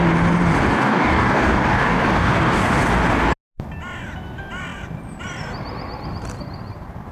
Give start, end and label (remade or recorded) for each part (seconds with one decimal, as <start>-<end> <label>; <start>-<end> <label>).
0.0-0.7 recorded; 0.7-2.8 remade; 2.8-7.1 recorded